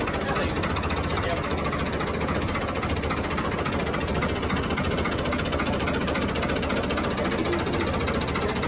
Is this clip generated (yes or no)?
no